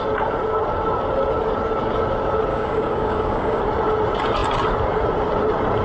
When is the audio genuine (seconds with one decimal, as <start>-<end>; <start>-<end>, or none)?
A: 0.0-2.5; 3.6-5.8